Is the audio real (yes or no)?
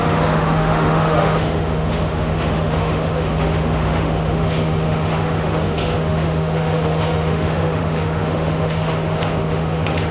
no